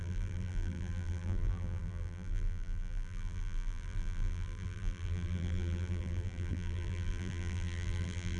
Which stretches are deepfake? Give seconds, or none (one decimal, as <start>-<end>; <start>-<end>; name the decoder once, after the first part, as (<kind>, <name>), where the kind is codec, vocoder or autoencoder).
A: 0.0-8.4 (vocoder, BigVGAN v2)